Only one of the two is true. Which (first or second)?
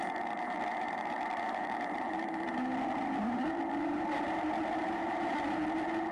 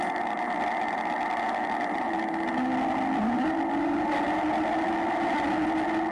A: second